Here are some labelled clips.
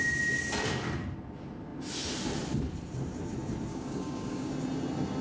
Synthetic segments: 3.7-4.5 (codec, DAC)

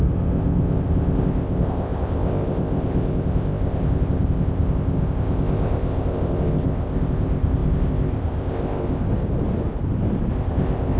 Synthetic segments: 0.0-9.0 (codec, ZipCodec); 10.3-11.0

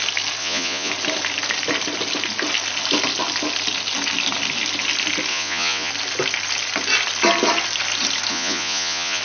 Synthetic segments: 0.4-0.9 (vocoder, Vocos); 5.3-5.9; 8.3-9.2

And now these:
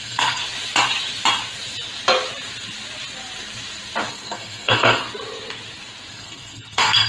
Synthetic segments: 0.0-0.4 (codec, SNAC); 4.1-5.0; 6.1-7.1